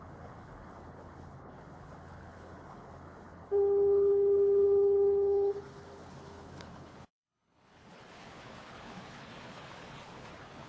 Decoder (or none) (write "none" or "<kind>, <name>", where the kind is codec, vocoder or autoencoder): codec, HILCodec